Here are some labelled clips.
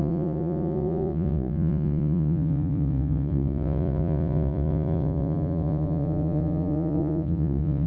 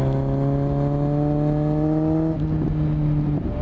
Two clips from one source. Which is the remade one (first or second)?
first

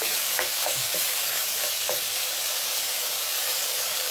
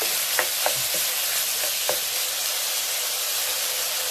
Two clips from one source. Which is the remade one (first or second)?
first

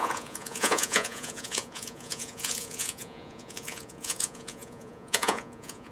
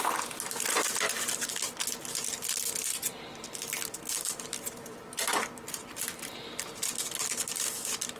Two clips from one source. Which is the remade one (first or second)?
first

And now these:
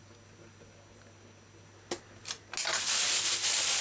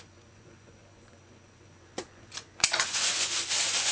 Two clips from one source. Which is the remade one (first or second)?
second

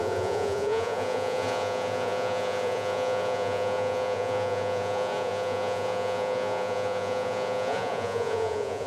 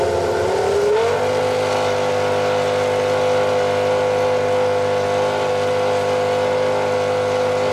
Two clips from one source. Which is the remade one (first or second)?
first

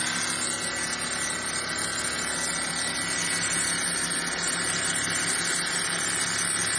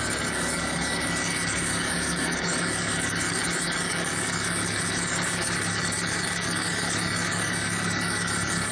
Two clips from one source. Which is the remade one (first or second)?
second